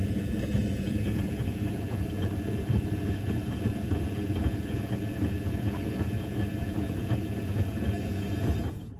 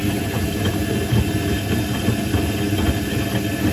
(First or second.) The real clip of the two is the second